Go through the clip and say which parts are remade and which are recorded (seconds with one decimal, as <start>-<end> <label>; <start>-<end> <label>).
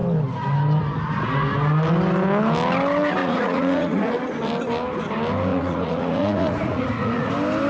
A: 0.0-3.2 recorded; 3.2-4.1 remade; 4.1-5.5 recorded; 5.5-7.3 remade; 7.3-7.7 recorded